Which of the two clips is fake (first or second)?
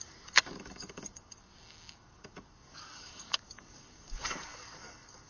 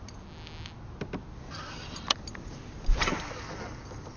first